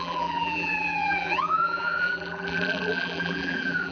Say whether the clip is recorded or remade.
remade